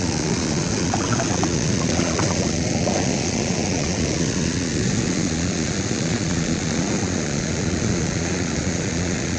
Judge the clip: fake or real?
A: fake